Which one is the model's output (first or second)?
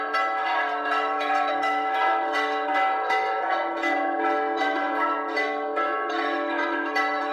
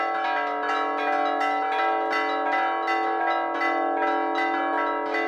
first